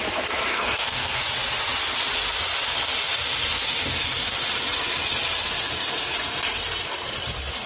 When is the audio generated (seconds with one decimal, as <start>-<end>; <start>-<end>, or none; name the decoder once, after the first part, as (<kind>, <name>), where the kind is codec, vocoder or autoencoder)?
0.5-1.2 (codec, SNAC)